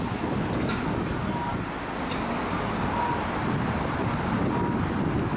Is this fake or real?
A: real